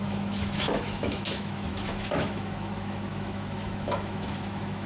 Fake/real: fake